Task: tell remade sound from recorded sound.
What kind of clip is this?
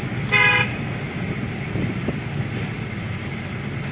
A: recorded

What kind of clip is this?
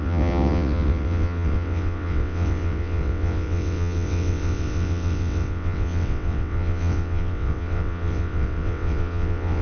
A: remade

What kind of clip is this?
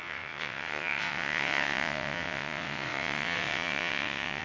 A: remade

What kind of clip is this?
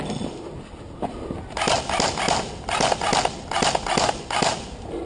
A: recorded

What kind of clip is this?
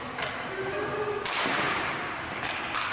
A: recorded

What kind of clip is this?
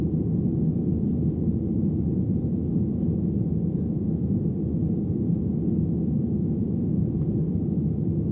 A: recorded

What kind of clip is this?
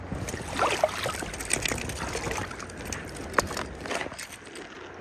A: recorded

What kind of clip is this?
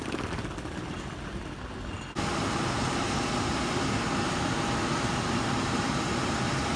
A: recorded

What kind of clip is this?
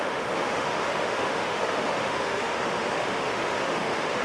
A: remade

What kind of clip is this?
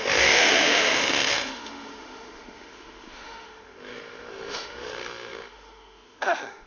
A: remade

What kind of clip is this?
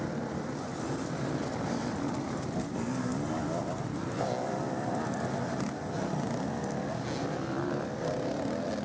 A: recorded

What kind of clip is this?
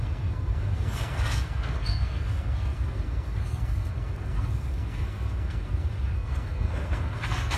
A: remade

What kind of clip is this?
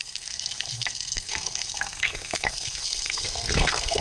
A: remade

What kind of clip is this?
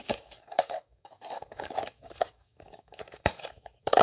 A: remade